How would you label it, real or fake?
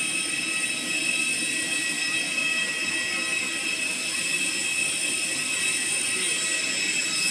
real